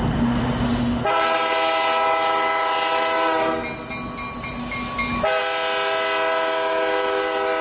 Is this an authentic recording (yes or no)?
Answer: yes